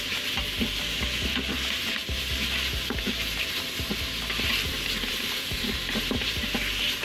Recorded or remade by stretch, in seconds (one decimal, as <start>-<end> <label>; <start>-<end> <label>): 0.0-2.0 recorded; 2.0-3.5 remade; 3.5-4.7 recorded; 4.7-5.7 remade; 5.7-7.0 recorded